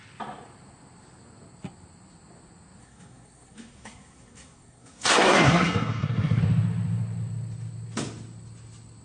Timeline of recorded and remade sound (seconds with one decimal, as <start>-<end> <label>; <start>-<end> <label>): 0.0-2.8 recorded; 2.8-6.4 remade; 6.4-9.0 recorded